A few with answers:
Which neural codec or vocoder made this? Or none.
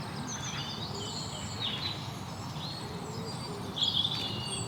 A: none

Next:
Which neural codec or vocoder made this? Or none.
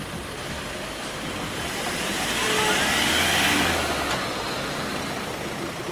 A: none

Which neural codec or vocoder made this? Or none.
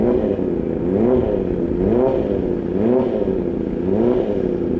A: none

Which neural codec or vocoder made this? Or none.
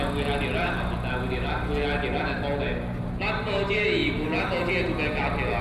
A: none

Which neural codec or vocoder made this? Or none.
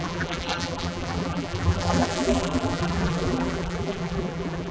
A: vocoder, BigVGAN v2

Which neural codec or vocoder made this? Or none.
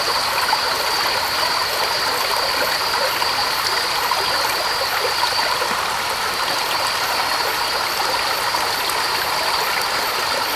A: none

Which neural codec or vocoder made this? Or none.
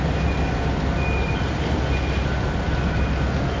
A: none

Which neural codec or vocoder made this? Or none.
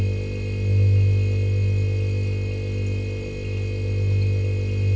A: none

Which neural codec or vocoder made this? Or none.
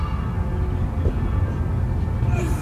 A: none